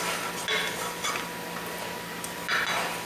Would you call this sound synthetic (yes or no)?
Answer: no